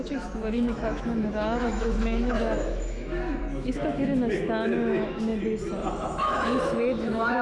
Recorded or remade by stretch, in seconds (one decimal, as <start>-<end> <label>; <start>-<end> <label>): 0.0-5.3 remade; 5.3-5.9 recorded; 5.9-7.4 remade